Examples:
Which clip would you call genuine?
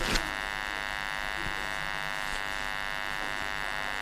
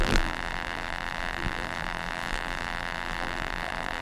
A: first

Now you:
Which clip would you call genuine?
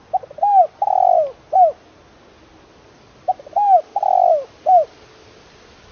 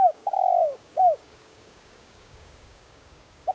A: first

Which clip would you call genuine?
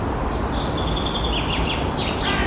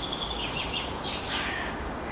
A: first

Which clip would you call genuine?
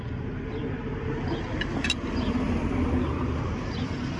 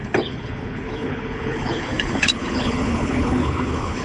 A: first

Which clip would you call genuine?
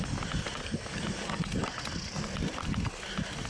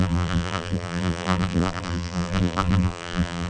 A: first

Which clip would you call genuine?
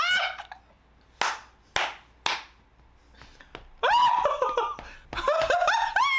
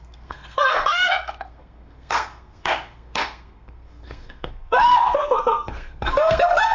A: first